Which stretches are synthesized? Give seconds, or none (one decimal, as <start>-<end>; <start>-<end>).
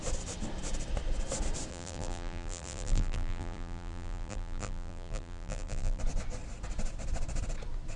1.7-6.0